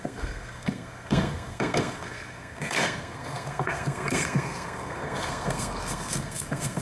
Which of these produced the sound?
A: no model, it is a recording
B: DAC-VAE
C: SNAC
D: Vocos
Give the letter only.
C